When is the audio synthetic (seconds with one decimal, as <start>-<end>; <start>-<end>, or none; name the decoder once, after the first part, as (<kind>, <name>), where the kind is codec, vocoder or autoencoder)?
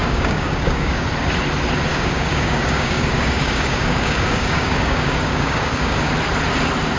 0.0-1.0 (codec, DAC); 1.9-6.1